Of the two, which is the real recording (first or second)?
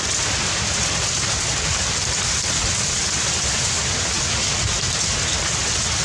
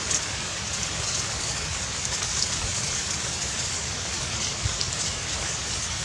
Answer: first